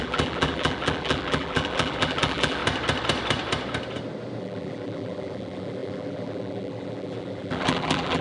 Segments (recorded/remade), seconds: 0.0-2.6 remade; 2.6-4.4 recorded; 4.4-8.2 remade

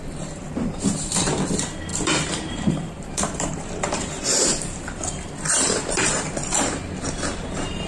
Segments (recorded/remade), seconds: 0.0-7.9 remade